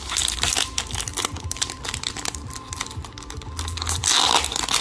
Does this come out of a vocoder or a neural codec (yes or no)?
no